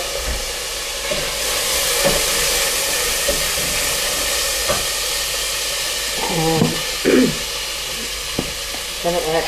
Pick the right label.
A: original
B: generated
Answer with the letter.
A